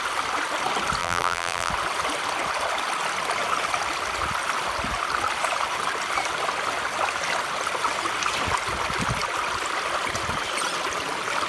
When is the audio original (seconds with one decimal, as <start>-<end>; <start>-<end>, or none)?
0.0-1.0; 1.7-11.5